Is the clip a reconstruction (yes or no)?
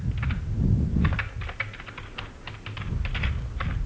no